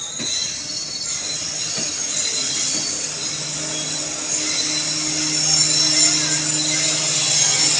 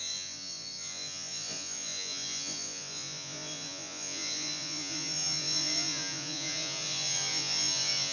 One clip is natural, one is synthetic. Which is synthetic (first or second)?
second